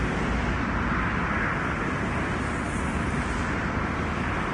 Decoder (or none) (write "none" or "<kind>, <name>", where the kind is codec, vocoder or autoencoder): none